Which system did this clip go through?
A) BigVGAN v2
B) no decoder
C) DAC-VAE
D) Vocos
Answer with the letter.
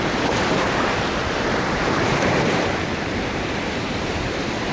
A